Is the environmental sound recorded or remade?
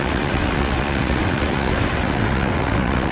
remade